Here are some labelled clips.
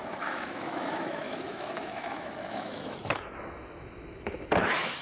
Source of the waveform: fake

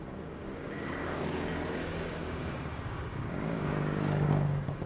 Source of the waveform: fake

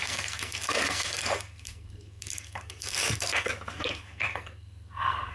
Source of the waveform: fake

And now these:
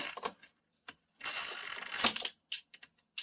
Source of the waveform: real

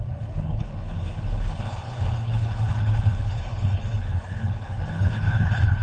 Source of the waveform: fake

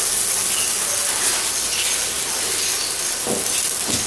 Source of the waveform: real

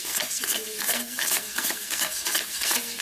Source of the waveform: fake